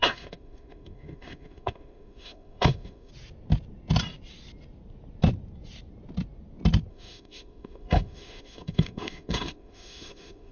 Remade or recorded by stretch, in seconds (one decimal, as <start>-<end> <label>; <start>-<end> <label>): 0.0-3.1 remade; 3.1-6.9 recorded; 6.9-10.5 remade